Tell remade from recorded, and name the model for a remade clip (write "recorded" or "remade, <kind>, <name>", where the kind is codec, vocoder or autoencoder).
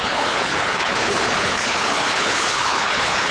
remade, codec, HILCodec